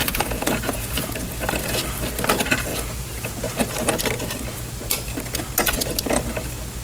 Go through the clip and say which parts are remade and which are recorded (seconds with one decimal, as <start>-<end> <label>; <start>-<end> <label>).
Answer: 0.0-1.1 remade; 1.1-2.7 recorded; 2.7-3.3 remade; 3.3-6.8 recorded